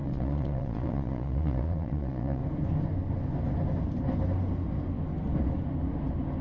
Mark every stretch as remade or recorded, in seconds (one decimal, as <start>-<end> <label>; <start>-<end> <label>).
0.0-2.4 remade; 2.4-6.4 recorded